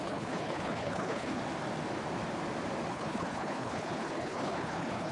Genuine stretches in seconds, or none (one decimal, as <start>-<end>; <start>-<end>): 1.4-2.9